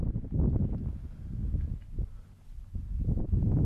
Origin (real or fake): real